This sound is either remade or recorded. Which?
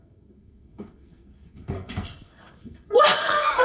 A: remade